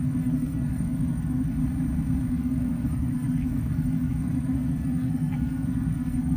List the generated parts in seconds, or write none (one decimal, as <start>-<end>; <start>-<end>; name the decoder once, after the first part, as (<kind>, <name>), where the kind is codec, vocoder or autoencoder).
0.0-1.6 (codec, SNAC); 2.3-6.4